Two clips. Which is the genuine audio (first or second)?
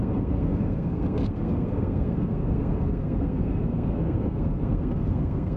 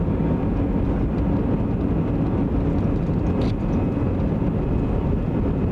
second